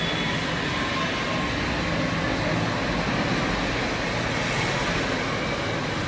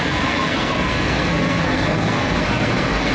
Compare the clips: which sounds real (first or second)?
first